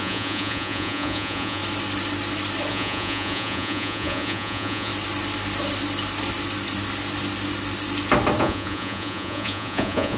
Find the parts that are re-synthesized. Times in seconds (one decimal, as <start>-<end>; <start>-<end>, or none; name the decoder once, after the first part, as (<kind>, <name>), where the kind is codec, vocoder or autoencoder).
0.0-1.6 (vocoder, Vocos); 2.7-4.9; 8.4-10.2